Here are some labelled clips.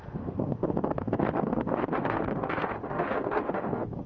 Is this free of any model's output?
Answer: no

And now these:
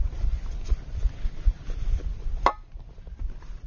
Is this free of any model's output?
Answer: yes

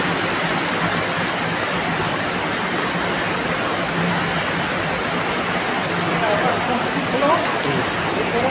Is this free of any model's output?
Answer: yes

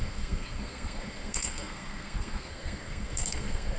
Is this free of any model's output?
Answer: no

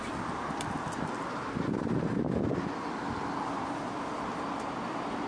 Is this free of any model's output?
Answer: yes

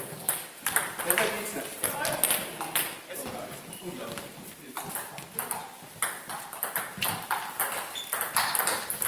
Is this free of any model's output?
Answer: yes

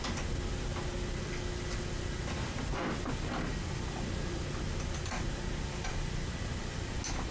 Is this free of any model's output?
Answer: yes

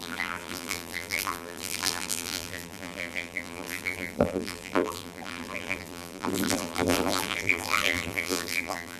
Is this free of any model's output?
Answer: no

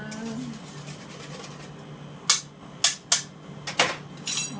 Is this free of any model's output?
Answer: yes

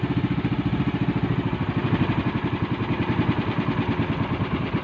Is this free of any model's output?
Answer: yes